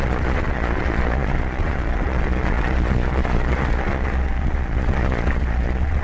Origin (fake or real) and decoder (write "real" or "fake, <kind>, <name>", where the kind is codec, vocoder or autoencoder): fake, vocoder, Vocos